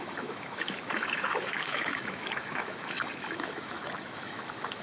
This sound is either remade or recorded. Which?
remade